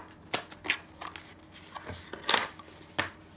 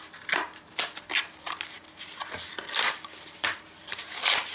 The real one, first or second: first